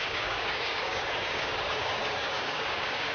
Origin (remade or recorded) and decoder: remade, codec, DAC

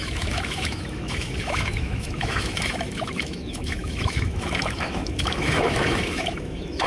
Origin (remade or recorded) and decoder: remade, autoencoder, DAC-VAE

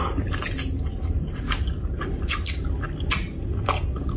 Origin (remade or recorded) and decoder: recorded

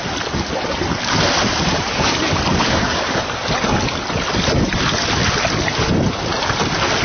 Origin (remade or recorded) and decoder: recorded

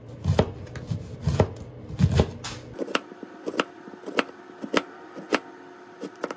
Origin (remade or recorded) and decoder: recorded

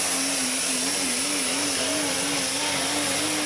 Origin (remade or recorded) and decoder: recorded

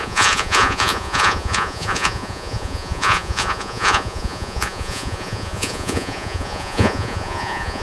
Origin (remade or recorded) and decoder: remade, vocoder, Vocos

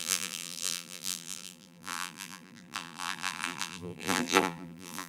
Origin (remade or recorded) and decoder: remade, vocoder, BigVGAN v2